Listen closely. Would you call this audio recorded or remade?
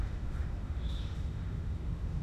remade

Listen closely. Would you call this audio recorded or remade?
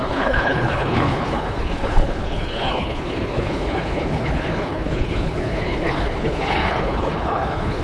remade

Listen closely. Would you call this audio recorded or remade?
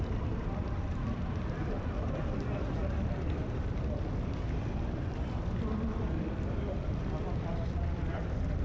remade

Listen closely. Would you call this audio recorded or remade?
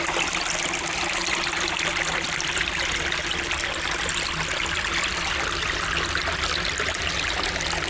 recorded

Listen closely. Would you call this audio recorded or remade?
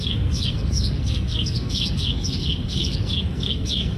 remade